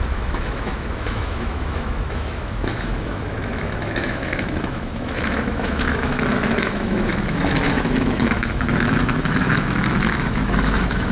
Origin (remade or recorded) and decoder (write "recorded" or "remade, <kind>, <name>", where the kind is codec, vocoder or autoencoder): remade, autoencoder, DAC-VAE